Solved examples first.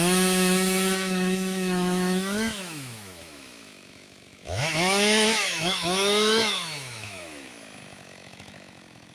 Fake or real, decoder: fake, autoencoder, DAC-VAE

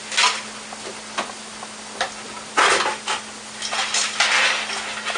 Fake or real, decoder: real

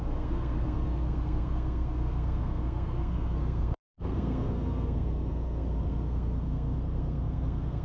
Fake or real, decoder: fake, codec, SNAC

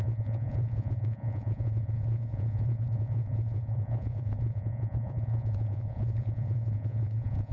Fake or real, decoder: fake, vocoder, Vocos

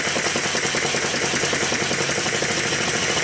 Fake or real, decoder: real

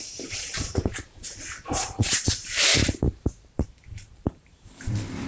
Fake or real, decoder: fake, vocoder, BigVGAN v2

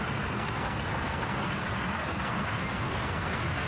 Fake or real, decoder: fake, codec, SNAC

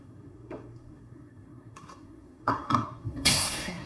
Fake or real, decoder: fake, codec, SNAC